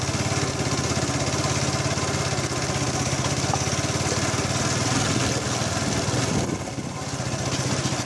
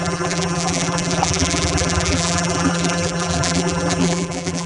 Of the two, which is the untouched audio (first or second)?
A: first